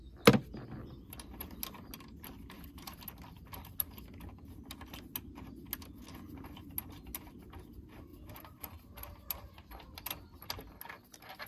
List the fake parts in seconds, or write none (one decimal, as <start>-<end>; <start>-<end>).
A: none